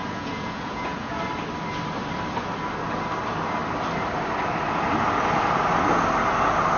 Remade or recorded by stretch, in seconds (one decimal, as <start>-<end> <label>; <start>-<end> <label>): 0.0-1.2 remade; 1.2-6.8 recorded